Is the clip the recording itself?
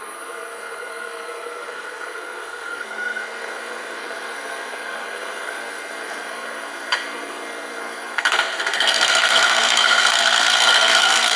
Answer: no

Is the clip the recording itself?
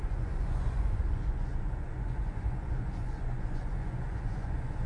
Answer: no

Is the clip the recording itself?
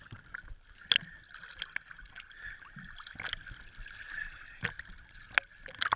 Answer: yes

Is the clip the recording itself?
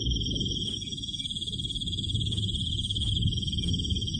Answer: yes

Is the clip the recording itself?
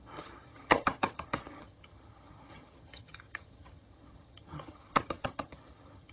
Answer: no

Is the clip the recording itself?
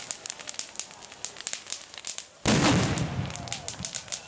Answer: yes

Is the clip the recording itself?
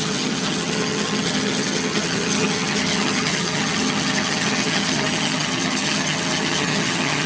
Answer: no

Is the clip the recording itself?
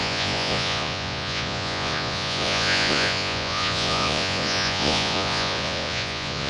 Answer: no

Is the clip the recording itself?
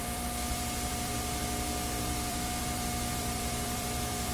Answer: no